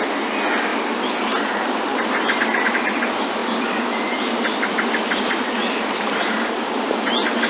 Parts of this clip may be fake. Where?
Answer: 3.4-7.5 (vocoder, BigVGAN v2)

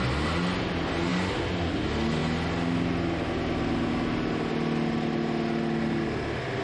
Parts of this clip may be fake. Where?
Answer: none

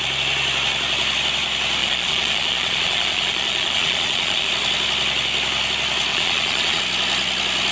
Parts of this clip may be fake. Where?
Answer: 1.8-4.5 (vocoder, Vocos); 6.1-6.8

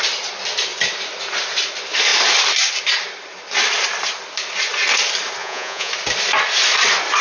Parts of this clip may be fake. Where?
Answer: 5.4-5.9 (vocoder, Vocos)